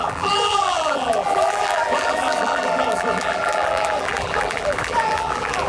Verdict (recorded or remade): remade